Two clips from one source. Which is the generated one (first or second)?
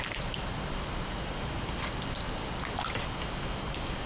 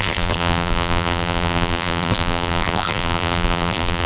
second